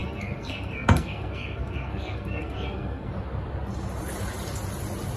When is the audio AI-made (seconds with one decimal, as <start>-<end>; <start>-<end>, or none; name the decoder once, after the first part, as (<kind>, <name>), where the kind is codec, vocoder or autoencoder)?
0.0-3.1 (codec, SNAC)